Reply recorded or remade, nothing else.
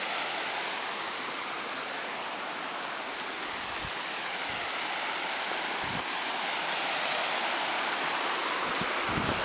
recorded